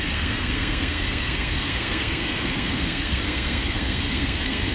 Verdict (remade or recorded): remade